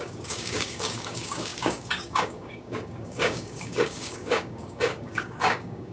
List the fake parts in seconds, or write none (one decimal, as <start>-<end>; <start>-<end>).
0.0-5.9

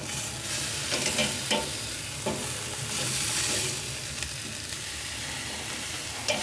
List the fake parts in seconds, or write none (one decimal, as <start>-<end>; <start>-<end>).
none

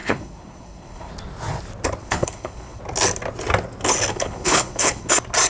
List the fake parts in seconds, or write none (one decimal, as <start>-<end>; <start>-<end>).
0.0-1.1; 2.0-2.8; 4.1-5.1

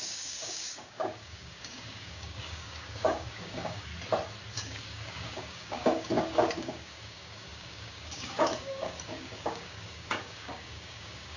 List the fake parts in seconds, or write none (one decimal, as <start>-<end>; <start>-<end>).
0.0-3.9; 4.5-11.4

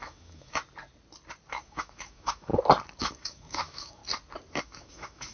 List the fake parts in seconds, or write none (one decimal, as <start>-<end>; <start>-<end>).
0.0-0.6; 1.5-2.5; 3.0-4.0; 4.6-5.3

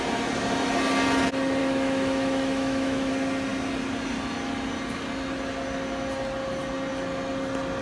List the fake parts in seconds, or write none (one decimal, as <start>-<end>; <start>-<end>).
1.6-3.1

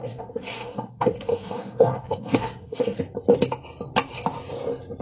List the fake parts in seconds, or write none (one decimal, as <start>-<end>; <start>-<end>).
0.0-3.0